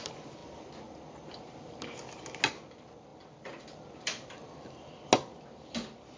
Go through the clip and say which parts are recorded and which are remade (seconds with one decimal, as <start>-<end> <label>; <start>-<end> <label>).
0.0-6.2 recorded